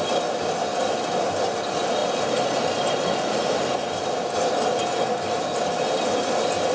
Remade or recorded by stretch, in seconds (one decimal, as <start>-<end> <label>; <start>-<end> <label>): 0.0-6.7 recorded